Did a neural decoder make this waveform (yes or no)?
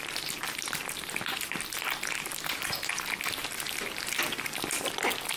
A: no